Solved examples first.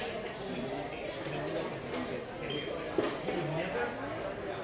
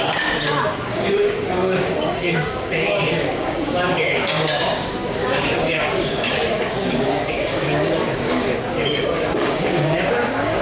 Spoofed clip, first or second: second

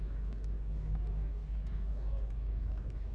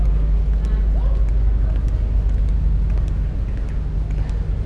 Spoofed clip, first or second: first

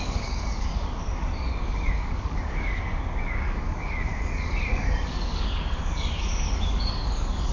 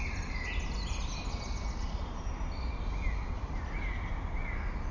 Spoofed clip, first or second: first